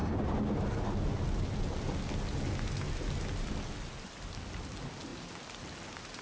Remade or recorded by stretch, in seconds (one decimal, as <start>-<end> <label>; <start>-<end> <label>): 0.0-6.2 recorded